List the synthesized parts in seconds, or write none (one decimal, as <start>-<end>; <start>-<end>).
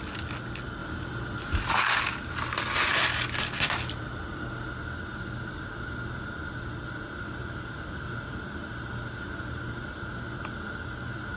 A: none